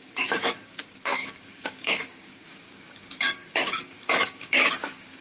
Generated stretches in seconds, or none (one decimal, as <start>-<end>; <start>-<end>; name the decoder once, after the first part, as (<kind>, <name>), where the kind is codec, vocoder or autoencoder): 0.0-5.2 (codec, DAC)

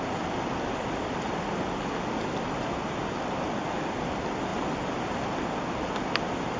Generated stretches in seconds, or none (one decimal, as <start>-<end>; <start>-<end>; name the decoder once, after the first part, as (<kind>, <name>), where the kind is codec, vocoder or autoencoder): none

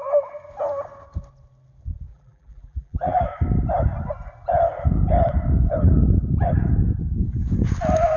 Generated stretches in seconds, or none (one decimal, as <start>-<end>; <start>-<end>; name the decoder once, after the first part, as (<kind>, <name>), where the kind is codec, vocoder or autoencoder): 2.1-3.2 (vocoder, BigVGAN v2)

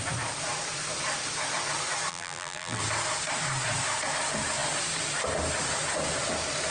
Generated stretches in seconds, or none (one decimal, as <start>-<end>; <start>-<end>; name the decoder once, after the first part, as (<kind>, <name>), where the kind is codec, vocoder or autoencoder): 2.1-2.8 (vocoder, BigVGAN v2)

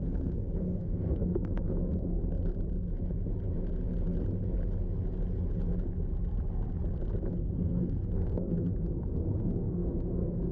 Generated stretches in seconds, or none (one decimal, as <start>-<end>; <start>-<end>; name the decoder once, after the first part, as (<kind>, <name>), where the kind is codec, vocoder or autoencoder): 0.0-2.2 (codec, SNAC); 7.3-10.5

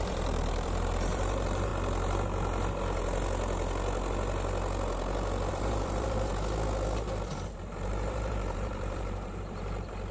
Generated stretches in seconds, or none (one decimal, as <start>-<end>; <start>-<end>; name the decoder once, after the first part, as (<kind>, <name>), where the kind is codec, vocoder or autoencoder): 0.0-1.7 (vocoder, BigVGAN v2); 5.5-6.3; 7.9-10.1

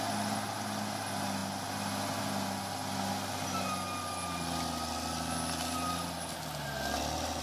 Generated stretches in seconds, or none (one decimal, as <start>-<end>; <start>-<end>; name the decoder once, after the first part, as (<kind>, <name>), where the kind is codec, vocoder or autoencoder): none

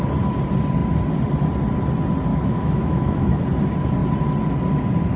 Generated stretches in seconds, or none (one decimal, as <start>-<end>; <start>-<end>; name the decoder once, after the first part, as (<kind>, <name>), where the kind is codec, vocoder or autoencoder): 2.3-3.4 (autoencoder, DAC-VAE)